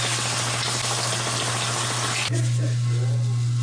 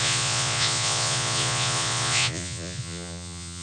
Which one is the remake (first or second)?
second